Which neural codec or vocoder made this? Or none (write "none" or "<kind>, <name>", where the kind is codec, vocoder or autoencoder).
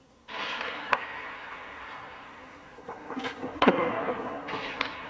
codec, SNAC